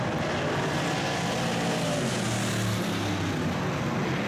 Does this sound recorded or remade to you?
recorded